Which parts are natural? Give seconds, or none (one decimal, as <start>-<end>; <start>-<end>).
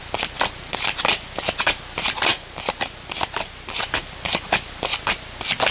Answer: 0.0-5.7